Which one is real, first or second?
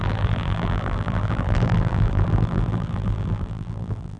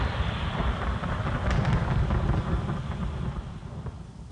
second